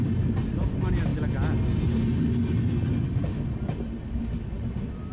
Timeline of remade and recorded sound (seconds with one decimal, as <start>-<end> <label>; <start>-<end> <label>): 0.0-5.1 recorded

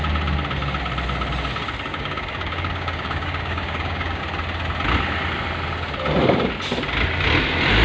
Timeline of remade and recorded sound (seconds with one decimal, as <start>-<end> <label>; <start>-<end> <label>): 0.0-1.9 recorded; 1.9-4.2 remade; 4.2-7.8 recorded

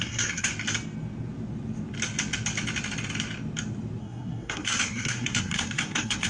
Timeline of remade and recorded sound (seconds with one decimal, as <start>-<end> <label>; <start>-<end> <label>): 0.0-0.5 remade; 0.5-4.0 recorded; 4.0-6.3 remade